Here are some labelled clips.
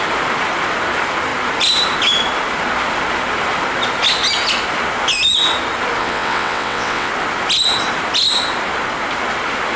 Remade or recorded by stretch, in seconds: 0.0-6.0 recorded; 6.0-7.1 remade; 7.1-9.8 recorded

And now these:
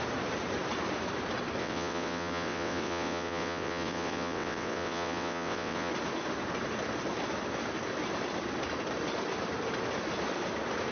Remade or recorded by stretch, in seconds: 0.0-1.6 recorded; 1.6-5.9 remade; 5.9-10.9 recorded

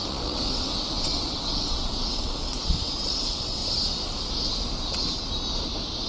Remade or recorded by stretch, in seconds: 0.0-3.6 remade; 3.6-6.1 recorded

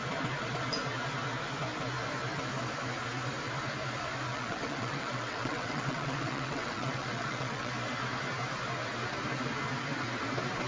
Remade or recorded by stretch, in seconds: 0.0-4.3 recorded; 4.3-7.7 remade; 7.7-10.7 recorded

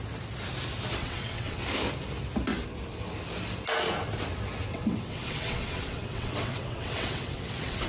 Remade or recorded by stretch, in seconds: 0.0-1.0 recorded; 1.0-1.6 remade; 1.6-4.7 recorded; 4.7-7.9 remade

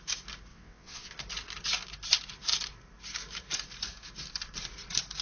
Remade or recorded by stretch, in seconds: 0.0-0.5 recorded; 0.5-1.1 remade; 1.1-5.2 recorded

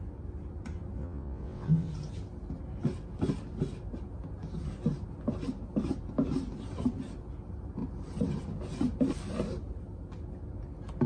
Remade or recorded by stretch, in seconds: 0.0-1.0 recorded; 1.0-1.9 remade; 1.9-11.1 recorded